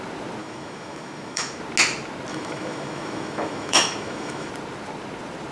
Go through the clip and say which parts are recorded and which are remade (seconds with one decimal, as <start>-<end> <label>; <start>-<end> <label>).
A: 0.0-0.4 recorded; 0.4-1.6 remade; 1.6-2.3 recorded; 2.3-4.5 remade; 4.5-5.5 recorded